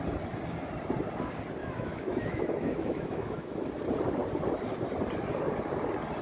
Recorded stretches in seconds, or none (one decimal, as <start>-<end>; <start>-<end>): 0.0-1.6; 3.7-6.2